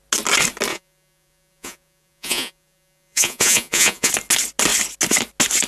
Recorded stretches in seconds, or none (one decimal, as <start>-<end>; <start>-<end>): 0.0-0.7; 4.1-5.7